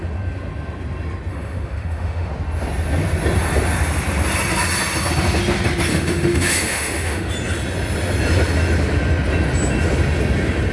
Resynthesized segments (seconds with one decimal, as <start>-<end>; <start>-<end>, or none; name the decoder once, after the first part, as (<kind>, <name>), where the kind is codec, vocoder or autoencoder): 1.3-2.3 (autoencoder, DAC-VAE); 5.9-7.3